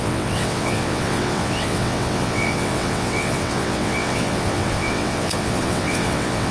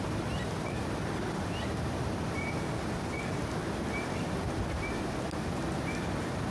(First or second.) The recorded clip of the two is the second